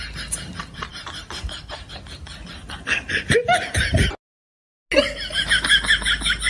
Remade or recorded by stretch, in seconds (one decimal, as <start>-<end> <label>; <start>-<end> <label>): 0.0-0.9 recorded; 0.9-1.4 remade; 1.4-6.5 recorded

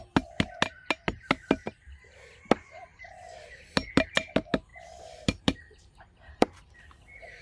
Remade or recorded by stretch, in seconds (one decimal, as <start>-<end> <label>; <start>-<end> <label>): 0.0-2.9 recorded; 2.9-3.6 remade; 3.6-4.7 recorded; 4.7-6.7 remade; 6.7-7.4 recorded

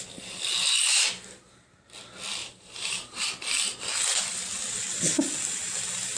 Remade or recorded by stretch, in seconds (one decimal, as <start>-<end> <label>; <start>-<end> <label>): 0.0-2.4 recorded; 2.4-3.3 remade; 3.3-6.2 recorded

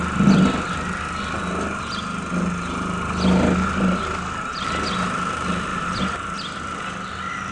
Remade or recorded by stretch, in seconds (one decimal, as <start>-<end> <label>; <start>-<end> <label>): 0.0-5.7 recorded; 5.7-6.8 remade; 6.8-7.5 recorded

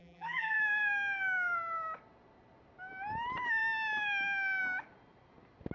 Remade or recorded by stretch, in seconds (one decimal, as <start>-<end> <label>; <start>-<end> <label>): 0.0-0.6 remade; 0.6-5.7 recorded

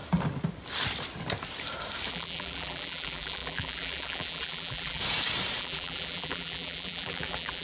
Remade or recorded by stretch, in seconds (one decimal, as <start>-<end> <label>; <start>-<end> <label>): 0.0-2.1 recorded; 2.1-5.0 remade; 5.0-5.6 recorded; 5.6-7.6 remade

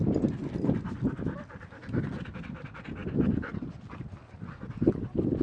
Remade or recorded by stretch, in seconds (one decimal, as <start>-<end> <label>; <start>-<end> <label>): 0.0-5.4 recorded